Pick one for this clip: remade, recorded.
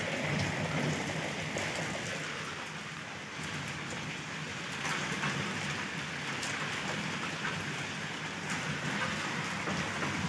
recorded